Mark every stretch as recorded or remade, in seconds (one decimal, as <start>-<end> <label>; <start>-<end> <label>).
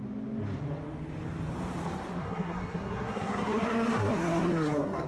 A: 0.0-2.2 recorded; 2.2-5.1 remade